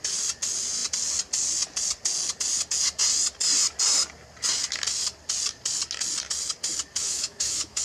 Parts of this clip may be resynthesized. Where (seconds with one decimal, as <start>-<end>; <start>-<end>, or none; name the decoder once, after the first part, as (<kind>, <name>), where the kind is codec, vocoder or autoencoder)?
7.0-7.8 (autoencoder, DAC-VAE)